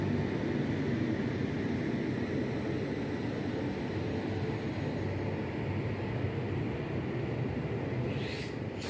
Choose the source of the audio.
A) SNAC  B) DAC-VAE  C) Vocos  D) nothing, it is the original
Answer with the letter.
D